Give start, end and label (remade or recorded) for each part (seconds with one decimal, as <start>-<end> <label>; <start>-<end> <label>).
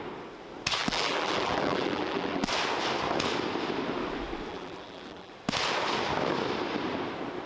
0.0-0.8 recorded; 0.8-2.5 remade; 2.5-4.5 recorded; 4.5-5.3 remade; 5.3-7.5 recorded